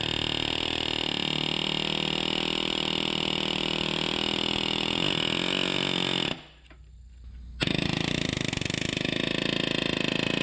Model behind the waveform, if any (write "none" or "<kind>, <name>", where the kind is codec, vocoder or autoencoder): none